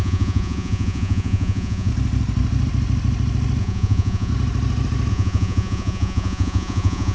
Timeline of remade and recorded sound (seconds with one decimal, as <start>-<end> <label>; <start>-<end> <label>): 0.0-1.9 remade; 1.9-3.6 recorded; 3.6-4.3 remade; 4.3-5.1 recorded; 5.1-7.1 remade